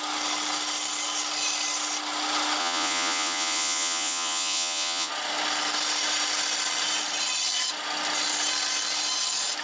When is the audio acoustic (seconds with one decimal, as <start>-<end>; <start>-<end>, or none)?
0.0-2.6; 5.1-9.6